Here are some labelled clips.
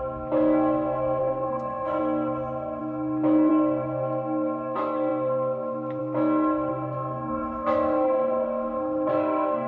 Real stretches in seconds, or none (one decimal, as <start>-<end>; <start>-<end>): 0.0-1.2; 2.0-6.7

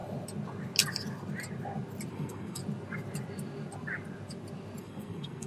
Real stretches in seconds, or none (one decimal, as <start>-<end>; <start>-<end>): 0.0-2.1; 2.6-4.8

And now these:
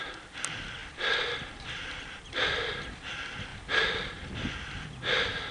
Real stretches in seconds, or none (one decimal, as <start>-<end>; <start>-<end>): 0.0-0.8; 2.6-3.5; 4.3-5.5